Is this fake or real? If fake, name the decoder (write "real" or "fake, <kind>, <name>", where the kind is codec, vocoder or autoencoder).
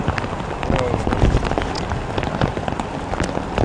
real